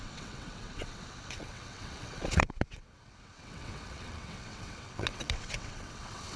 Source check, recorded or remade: remade